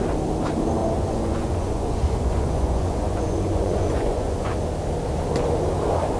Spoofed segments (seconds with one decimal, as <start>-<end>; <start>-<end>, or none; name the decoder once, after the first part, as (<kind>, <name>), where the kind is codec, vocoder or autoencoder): 0.8-4.5 (vocoder, Vocos)